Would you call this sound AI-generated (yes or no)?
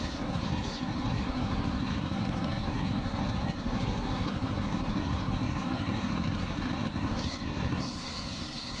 yes